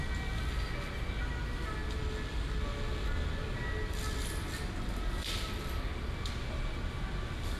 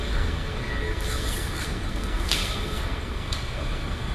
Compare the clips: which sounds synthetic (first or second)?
second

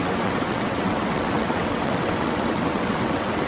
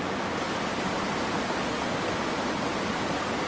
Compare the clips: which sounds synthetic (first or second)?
first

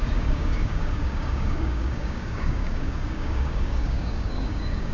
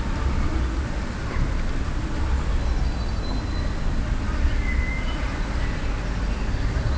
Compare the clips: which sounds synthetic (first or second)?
first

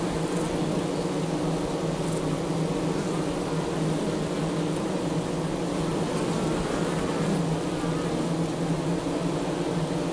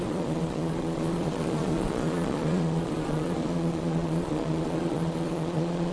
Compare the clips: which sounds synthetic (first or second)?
second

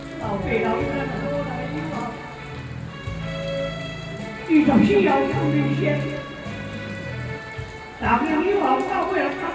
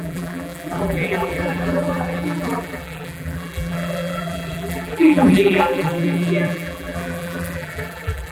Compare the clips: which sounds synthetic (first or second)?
second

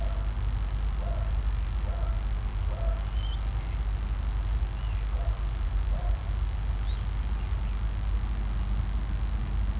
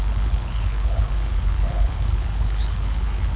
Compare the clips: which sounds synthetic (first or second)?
second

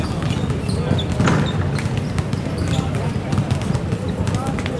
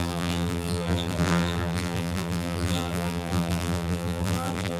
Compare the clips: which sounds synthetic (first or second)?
second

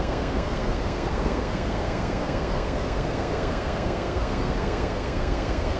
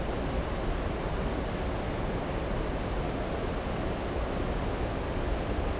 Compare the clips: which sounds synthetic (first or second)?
first